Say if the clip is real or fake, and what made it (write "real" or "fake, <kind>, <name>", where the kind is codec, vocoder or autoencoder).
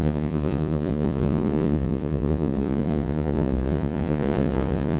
fake, vocoder, Vocos